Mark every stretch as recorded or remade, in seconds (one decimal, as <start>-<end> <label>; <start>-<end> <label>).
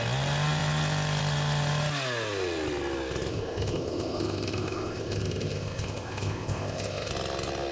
0.0-3.3 recorded; 3.3-7.1 remade; 7.1-7.7 recorded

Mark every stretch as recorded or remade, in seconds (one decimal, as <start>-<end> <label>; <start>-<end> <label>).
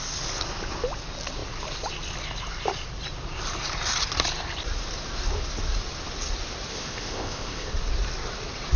0.0-6.7 recorded; 6.7-7.7 remade; 7.7-8.8 recorded